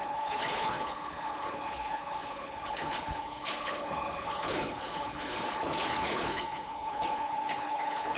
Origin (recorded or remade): remade